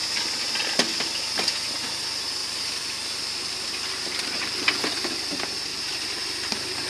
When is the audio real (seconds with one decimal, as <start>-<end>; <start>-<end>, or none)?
0.0-2.4; 4.9-5.7; 6.5-6.9